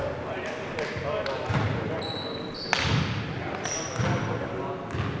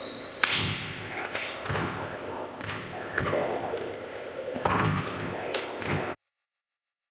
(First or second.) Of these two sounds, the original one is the first